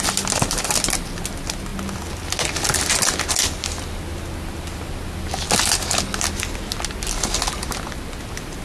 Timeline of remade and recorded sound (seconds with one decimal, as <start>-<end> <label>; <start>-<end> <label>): 0.0-8.6 recorded